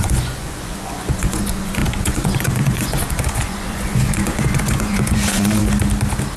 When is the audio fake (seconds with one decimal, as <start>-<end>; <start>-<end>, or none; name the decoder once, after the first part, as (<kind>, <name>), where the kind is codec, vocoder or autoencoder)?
0.0-5.6 (vocoder, Vocos)